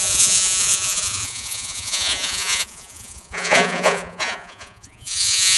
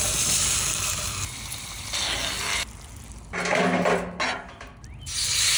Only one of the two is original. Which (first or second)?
second